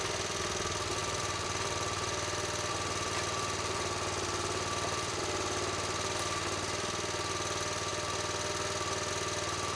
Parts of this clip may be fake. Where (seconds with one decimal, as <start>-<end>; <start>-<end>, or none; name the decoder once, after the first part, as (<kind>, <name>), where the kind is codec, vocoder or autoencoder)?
1.0-5.2 (vocoder, BigVGAN v2)